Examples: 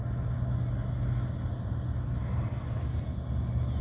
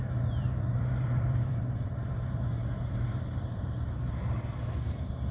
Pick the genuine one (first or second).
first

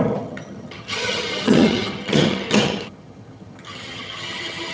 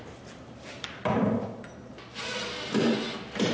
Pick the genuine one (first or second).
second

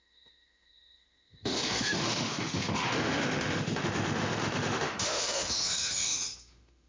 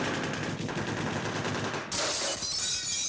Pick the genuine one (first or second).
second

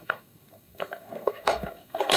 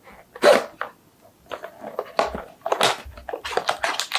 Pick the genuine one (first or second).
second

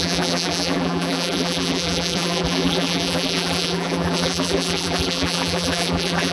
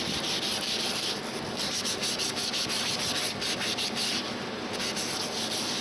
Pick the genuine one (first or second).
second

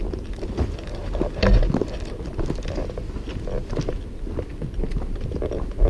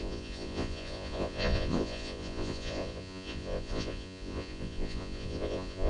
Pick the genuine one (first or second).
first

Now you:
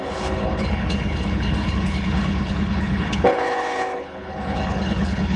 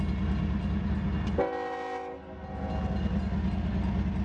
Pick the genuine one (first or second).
second